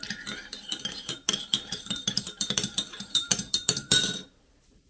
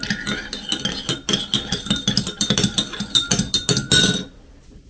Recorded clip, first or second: second